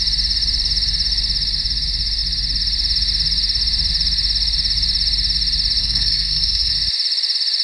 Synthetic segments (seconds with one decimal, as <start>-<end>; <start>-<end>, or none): 5.8-6.7